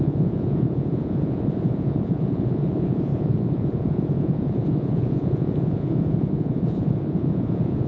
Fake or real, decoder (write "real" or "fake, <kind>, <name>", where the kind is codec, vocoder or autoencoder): fake, vocoder, Vocos